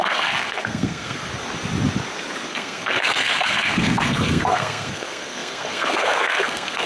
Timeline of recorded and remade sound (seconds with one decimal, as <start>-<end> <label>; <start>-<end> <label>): 0.0-1.3 remade; 1.3-2.5 recorded; 2.5-6.9 remade